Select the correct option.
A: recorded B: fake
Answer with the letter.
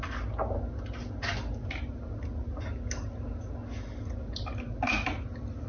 A